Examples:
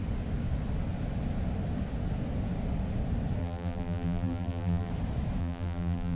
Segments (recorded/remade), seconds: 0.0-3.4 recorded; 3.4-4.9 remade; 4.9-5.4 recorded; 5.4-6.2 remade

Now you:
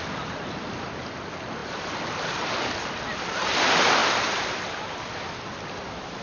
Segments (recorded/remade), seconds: 0.0-6.2 recorded

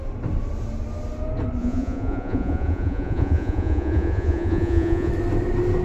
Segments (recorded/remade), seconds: 0.0-1.6 recorded; 1.6-5.1 remade; 5.1-5.8 recorded

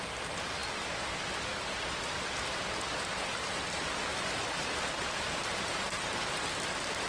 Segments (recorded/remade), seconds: 0.0-4.1 recorded; 4.1-6.5 remade; 6.5-7.1 recorded

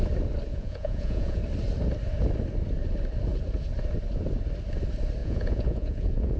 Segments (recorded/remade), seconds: 0.0-0.5 recorded; 0.5-1.4 remade; 1.4-5.2 recorded; 5.2-6.4 remade

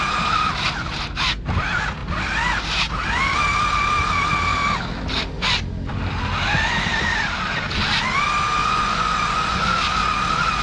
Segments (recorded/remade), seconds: 0.0-8.6 recorded; 8.6-9.8 remade; 9.8-10.6 recorded

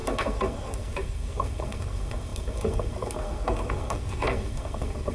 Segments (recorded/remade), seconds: 0.0-5.1 remade

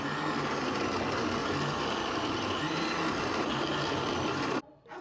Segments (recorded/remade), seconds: 0.0-5.0 recorded